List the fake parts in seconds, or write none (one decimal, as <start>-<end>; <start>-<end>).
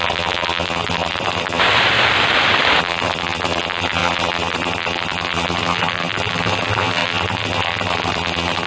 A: 0.0-1.6; 2.8-8.7